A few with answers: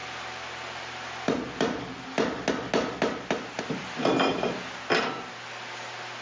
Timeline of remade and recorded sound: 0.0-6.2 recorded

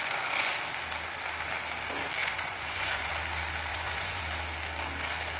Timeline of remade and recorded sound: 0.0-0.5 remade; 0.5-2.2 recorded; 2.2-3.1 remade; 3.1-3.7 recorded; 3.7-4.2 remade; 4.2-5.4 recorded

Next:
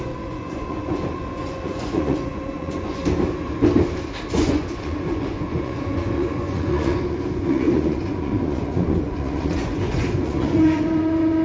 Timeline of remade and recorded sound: 0.0-3.0 remade; 3.0-4.3 recorded; 4.3-11.4 remade

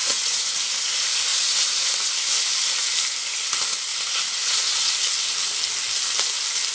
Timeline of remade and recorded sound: 0.0-0.5 remade; 0.5-1.3 recorded; 1.3-2.1 remade; 2.1-3.9 recorded; 3.9-5.0 remade; 5.0-6.7 recorded

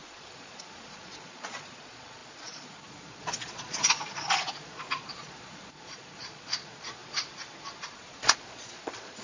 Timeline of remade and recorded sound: 0.0-7.0 remade; 7.0-7.8 recorded; 7.8-9.2 remade